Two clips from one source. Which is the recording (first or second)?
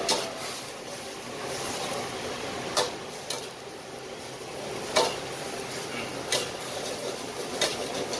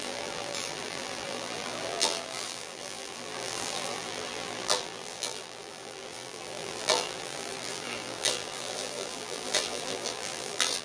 first